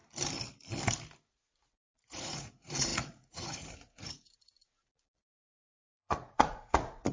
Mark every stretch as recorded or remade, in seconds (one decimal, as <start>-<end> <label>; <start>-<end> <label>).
0.0-1.3 recorded; 1.3-7.1 remade